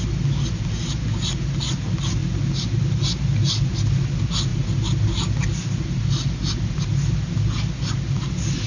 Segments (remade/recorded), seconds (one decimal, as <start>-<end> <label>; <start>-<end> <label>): 0.0-8.7 recorded